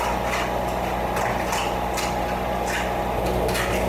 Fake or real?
real